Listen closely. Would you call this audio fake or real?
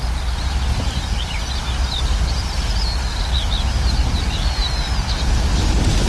real